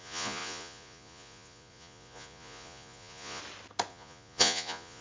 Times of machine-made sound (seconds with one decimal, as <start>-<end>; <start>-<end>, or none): 0.0-3.4; 3.9-5.0